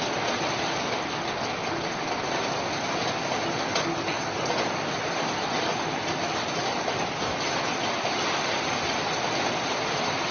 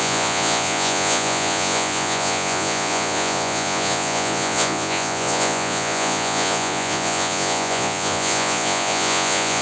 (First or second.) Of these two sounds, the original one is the first